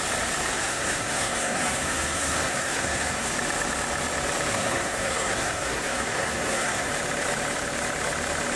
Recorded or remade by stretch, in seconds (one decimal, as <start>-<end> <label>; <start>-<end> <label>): 0.0-0.5 recorded; 0.5-3.3 remade; 3.3-4.5 recorded; 4.5-6.9 remade; 6.9-8.6 recorded